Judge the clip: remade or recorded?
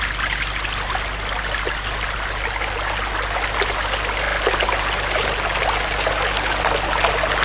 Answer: recorded